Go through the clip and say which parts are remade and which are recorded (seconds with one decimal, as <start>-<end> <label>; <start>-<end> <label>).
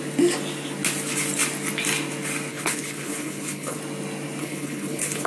0.0-2.5 recorded; 2.5-3.8 remade; 3.8-4.4 recorded; 4.4-5.3 remade